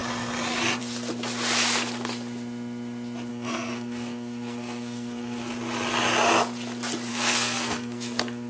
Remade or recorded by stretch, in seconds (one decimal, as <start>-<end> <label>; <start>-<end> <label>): 0.0-3.3 recorded; 3.3-5.5 remade; 5.5-7.1 recorded; 7.1-8.5 remade